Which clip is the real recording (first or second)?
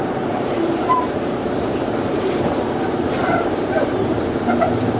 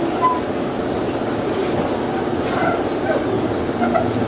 second